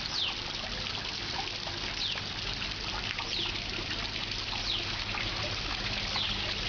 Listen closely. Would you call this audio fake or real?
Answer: real